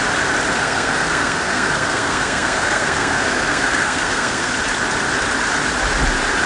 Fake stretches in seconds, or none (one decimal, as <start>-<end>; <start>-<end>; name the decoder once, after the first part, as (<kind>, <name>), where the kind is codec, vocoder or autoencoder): 0.6-4.5 (codec, SNAC)